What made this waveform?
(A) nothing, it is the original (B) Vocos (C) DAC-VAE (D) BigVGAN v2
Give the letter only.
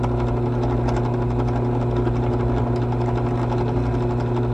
A